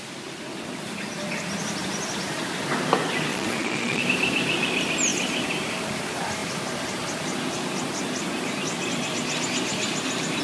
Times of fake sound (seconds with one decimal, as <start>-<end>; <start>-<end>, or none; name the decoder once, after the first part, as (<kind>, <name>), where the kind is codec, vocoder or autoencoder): 3.3-4.0 (vocoder, Vocos)